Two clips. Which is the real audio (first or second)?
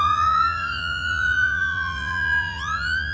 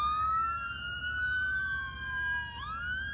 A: second